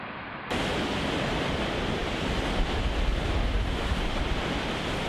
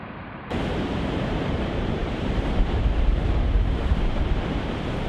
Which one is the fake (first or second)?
second